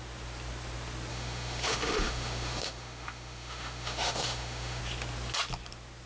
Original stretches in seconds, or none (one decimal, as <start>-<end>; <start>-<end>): 0.0-1.1; 4.8-6.1